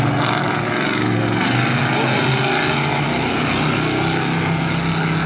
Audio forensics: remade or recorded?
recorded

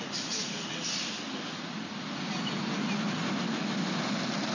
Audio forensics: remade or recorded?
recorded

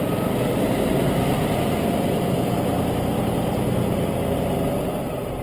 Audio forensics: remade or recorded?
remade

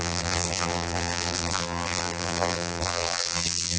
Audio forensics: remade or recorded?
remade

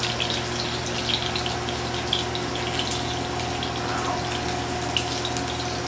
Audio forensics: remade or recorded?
recorded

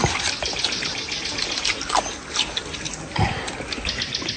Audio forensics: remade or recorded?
recorded